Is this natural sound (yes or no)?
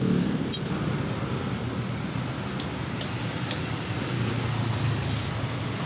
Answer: yes